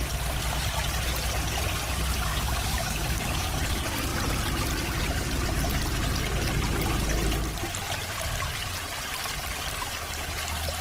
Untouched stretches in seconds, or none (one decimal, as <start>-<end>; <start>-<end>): 0.0-2.3; 3.5-10.8